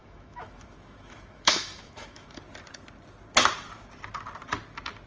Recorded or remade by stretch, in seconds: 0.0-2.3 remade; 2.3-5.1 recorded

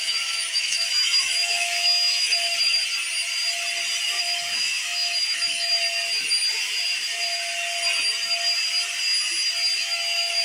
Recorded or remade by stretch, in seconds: 0.0-2.8 remade; 2.8-4.2 recorded; 4.2-5.7 remade; 5.7-9.8 recorded; 9.8-10.4 remade

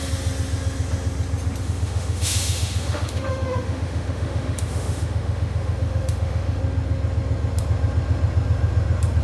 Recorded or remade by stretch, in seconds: 0.0-1.6 recorded; 1.6-6.6 remade; 6.6-9.2 recorded

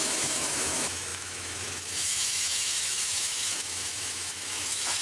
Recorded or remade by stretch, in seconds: 0.0-5.0 remade

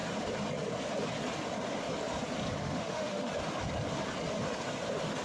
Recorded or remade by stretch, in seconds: 0.0-2.6 recorded; 2.6-3.3 remade; 3.3-5.2 recorded

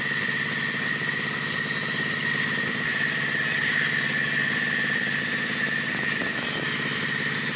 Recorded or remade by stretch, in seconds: 0.0-7.6 recorded

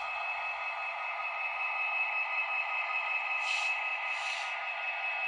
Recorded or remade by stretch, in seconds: 0.0-5.3 recorded